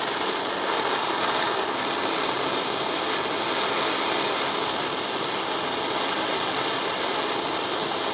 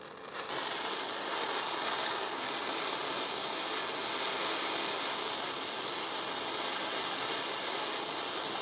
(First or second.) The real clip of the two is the second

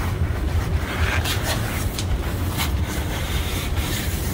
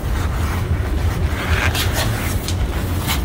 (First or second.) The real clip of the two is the second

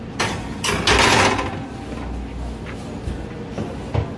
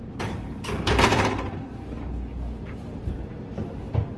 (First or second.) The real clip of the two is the first